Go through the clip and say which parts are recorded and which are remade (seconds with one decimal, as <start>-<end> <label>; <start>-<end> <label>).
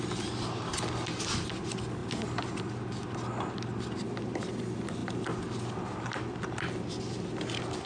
0.0-7.9 recorded